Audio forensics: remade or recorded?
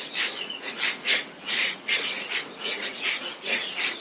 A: remade